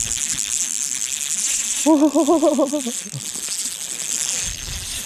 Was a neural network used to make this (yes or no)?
no